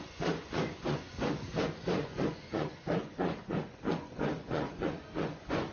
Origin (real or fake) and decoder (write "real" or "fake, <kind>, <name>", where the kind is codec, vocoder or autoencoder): fake, vocoder, Vocos